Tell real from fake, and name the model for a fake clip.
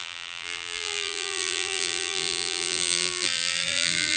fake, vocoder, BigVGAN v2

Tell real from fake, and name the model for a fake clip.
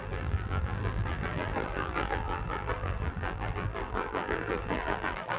fake, vocoder, BigVGAN v2